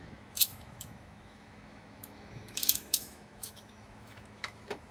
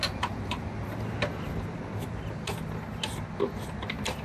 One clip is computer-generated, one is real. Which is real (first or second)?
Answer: second